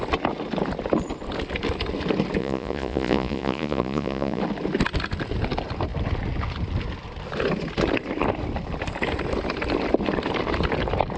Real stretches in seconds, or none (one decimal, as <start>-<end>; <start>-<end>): 0.0-2.4; 4.4-11.2